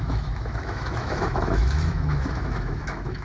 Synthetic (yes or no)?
yes